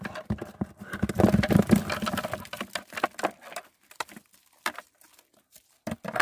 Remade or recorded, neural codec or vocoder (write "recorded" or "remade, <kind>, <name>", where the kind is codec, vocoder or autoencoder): recorded